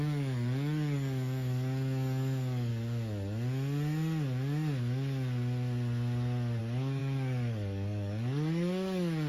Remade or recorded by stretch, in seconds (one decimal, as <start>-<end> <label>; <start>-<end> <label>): 0.0-2.7 remade; 2.7-6.6 recorded; 6.6-9.3 remade

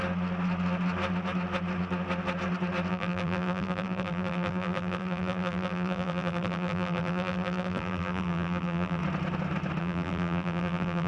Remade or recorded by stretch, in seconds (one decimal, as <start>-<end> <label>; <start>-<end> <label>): 0.0-2.9 recorded; 2.9-9.0 remade; 9.0-9.8 recorded; 9.8-11.1 remade